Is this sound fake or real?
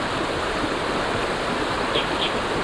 real